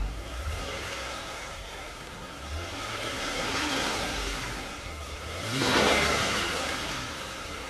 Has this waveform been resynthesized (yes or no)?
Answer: yes